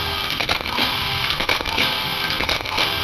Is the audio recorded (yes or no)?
no